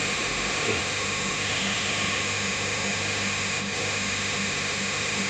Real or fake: fake